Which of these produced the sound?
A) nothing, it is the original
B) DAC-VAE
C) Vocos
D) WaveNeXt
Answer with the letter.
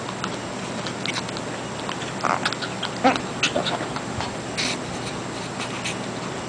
A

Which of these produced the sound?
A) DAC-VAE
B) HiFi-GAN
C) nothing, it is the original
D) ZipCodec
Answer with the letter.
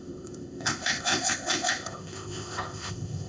D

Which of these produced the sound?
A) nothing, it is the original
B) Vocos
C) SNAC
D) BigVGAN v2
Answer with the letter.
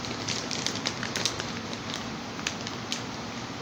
A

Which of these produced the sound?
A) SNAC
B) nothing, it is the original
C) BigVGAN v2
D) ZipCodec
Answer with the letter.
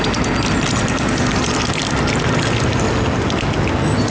B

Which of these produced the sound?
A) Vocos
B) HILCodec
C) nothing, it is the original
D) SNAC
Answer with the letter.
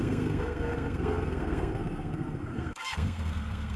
D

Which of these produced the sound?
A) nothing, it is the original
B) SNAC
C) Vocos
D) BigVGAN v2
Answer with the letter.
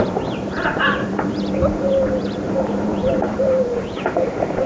D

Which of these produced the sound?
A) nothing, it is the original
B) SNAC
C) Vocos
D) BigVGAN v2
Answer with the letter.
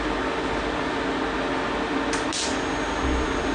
A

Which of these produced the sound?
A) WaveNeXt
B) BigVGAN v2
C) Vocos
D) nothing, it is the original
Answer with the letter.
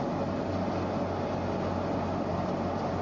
D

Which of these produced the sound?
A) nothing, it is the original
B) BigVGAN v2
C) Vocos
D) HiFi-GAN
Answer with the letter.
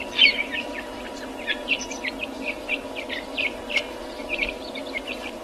B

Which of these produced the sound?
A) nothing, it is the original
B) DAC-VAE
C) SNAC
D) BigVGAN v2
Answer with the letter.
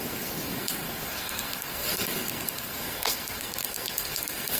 C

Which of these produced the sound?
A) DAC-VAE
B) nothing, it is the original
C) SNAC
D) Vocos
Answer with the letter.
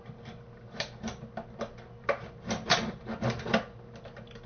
B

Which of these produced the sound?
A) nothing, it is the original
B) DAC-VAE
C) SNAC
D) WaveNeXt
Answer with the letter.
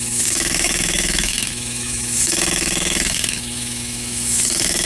B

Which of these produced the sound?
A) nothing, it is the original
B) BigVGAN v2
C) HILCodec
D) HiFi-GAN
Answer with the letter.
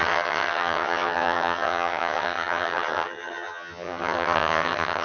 D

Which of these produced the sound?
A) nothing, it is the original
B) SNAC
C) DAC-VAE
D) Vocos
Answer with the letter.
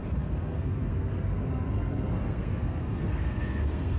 B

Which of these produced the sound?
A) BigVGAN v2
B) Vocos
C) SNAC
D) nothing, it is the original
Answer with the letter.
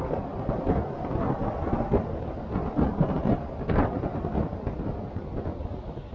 D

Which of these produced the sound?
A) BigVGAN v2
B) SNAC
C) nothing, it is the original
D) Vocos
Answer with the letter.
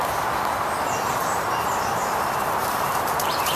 A